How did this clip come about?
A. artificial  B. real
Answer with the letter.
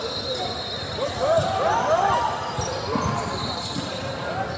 B